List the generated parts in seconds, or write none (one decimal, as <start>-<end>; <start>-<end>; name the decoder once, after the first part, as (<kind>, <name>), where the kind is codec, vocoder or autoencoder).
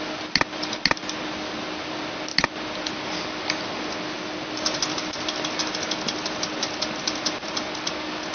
none